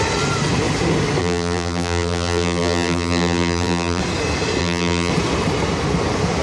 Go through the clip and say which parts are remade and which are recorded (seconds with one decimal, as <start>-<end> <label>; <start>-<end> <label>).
0.0-1.2 recorded; 1.2-4.0 remade; 4.0-4.6 recorded; 4.6-5.1 remade; 5.1-6.4 recorded

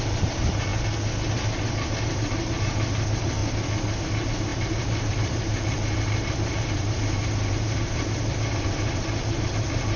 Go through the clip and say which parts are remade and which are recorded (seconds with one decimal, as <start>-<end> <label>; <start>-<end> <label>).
0.0-0.7 remade; 0.7-2.0 recorded; 2.0-3.4 remade; 3.4-4.0 recorded; 4.0-10.0 remade

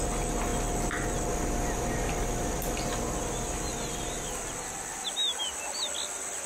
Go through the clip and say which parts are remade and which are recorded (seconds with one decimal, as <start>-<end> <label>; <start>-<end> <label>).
0.0-6.5 recorded

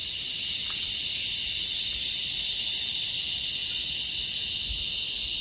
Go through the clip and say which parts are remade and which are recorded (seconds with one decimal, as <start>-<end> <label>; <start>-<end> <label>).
0.0-3.2 remade; 3.2-5.4 recorded